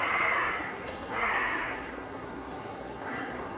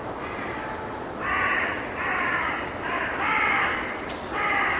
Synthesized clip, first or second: first